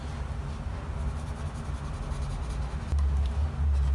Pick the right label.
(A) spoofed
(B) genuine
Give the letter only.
B